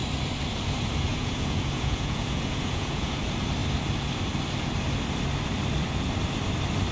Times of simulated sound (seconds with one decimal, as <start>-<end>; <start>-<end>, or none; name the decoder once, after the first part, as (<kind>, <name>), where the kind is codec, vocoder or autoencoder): 1.1-3.2 (vocoder, Vocos)